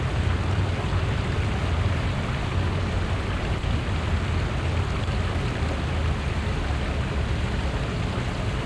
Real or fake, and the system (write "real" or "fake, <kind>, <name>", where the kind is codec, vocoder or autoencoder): real